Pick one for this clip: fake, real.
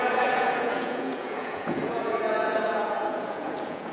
fake